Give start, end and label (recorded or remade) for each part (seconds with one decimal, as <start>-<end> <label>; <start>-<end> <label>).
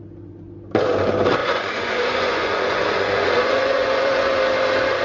0.0-1.4 recorded; 1.4-4.4 remade; 4.4-5.0 recorded